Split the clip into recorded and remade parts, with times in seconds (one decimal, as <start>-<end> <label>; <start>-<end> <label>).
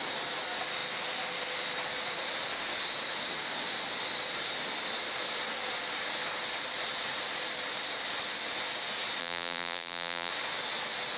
0.0-9.2 recorded; 9.2-10.3 remade; 10.3-11.2 recorded